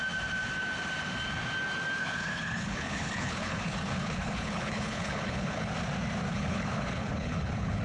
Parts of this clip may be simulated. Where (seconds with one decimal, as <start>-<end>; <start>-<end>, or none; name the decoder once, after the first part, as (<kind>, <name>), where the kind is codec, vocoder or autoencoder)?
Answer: 2.0-5.7 (codec, HILCodec); 6.3-7.8